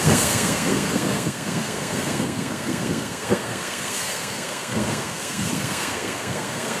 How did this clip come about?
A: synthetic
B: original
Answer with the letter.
A